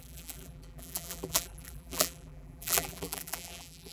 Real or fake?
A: fake